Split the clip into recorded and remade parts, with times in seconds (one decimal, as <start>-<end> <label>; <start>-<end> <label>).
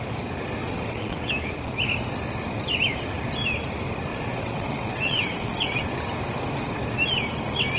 0.0-0.6 recorded; 0.6-1.3 remade; 1.3-4.1 recorded; 4.1-5.8 remade; 5.8-7.8 recorded